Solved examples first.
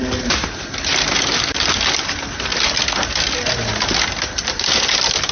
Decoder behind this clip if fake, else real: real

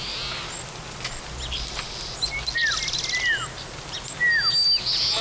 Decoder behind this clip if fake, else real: real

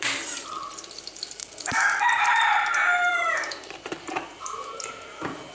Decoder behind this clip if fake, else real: fake, vocoder, BigVGAN v2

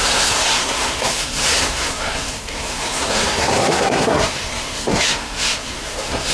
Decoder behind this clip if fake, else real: fake, codec, SNAC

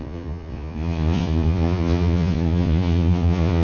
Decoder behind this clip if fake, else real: fake, vocoder, Vocos